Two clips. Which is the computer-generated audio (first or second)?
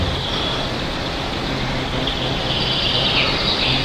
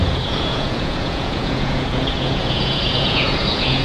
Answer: second